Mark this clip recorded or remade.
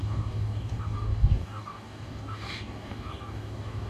remade